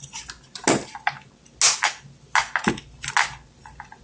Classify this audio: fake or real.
real